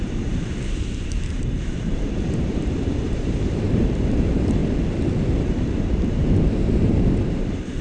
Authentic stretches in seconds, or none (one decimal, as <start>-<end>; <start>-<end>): 4.6-5.4